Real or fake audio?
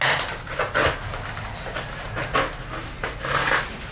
real